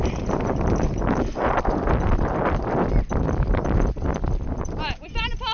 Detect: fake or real fake